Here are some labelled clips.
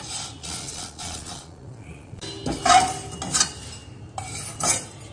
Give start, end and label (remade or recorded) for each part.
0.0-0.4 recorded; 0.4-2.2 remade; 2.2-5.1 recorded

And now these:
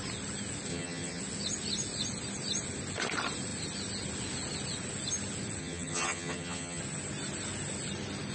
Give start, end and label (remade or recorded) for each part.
0.0-0.7 recorded; 0.7-1.2 remade; 1.2-5.6 recorded; 5.6-6.8 remade; 6.8-8.3 recorded

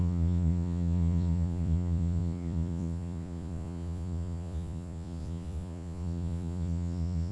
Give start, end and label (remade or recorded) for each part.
0.0-7.3 remade

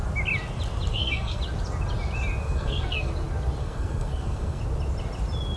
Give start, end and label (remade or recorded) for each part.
0.0-0.9 recorded; 0.9-1.4 remade; 1.4-2.4 recorded; 2.4-3.1 remade; 3.1-3.6 recorded; 3.6-4.6 remade; 4.6-5.6 recorded

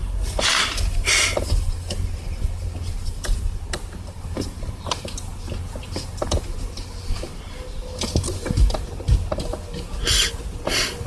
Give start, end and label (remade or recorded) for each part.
0.0-11.1 recorded

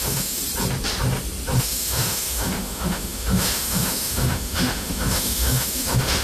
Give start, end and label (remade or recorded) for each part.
0.0-0.4 remade; 0.4-1.6 recorded; 1.6-6.2 remade

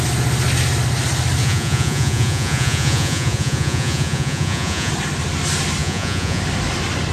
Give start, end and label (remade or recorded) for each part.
0.0-1.4 recorded; 1.4-4.9 remade; 4.9-5.8 recorded; 5.8-6.4 remade; 6.4-7.1 recorded

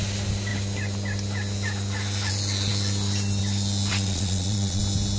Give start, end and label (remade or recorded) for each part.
0.0-3.9 recorded; 3.9-4.8 remade; 4.8-5.2 recorded